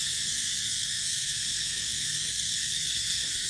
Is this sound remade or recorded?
remade